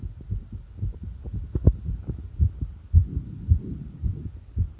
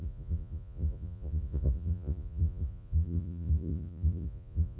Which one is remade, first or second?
second